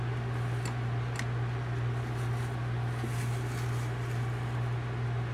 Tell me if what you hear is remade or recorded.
recorded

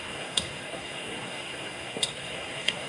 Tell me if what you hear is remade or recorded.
remade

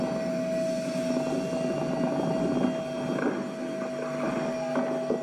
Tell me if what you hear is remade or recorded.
recorded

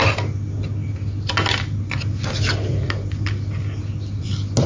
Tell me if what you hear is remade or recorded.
recorded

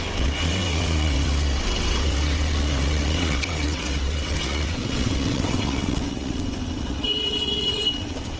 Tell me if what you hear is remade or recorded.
remade